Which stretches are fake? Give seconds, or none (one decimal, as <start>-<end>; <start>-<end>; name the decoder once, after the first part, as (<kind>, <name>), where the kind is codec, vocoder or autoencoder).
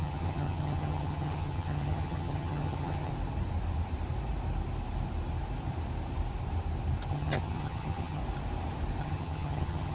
0.0-3.1 (vocoder, HiFi-GAN); 7.1-8.2; 9.0-9.9